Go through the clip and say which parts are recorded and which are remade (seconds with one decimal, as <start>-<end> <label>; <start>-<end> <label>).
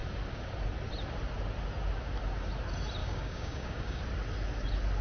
0.0-3.0 recorded; 3.0-4.0 remade; 4.0-5.0 recorded